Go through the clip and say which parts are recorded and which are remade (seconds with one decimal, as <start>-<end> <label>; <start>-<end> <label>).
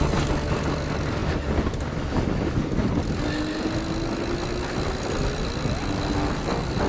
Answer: 0.0-6.9 recorded